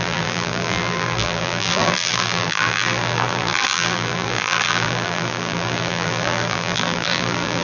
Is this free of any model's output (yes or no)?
no